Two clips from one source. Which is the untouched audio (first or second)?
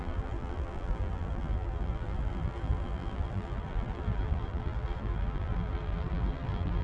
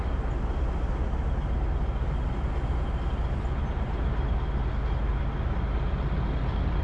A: second